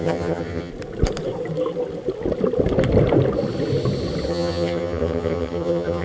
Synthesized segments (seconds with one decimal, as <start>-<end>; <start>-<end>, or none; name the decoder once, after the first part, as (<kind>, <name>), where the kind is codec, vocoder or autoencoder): 0.0-0.7 (vocoder, HiFi-GAN); 4.3-6.0